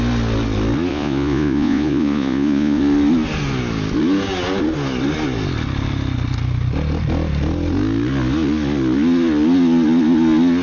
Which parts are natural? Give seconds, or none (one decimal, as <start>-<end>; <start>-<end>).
0.0-0.9; 2.8-10.6

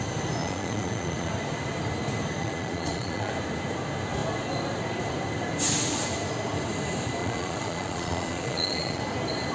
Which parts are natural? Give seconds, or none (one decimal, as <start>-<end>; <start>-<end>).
0.0-0.4; 1.3-2.4; 3.3-7.2; 9.0-9.5

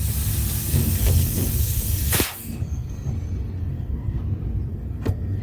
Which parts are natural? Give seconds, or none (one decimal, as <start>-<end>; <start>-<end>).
0.0-0.7; 3.1-3.6; 4.2-4.7

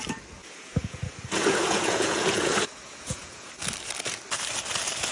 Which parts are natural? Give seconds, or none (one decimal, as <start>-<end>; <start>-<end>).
0.0-0.4; 3.5-5.1